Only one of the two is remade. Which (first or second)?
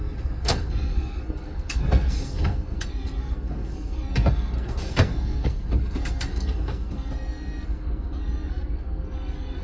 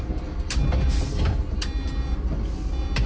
first